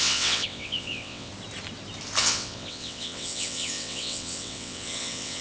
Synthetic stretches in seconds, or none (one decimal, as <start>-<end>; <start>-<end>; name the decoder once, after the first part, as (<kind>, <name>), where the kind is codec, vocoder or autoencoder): 0.0-1.3 (vocoder, WaveNeXt); 2.2-5.4